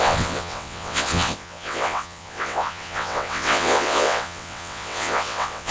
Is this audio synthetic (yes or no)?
yes